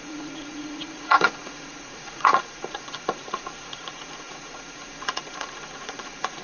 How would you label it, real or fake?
fake